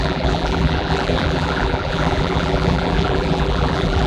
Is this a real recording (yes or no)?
no